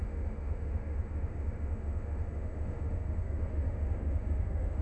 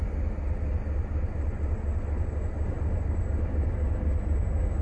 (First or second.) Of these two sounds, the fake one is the first